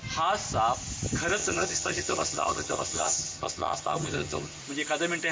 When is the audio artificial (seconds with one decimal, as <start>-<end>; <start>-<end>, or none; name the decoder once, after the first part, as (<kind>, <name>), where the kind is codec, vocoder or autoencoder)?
1.4-4.6 (vocoder, HiFi-GAN)